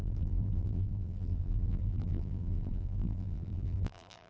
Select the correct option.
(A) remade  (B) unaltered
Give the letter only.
A